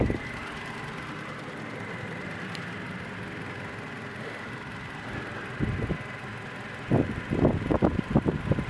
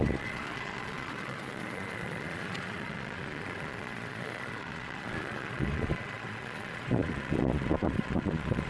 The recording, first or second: first